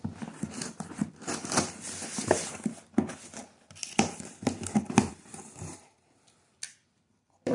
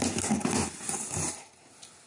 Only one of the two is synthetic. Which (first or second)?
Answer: first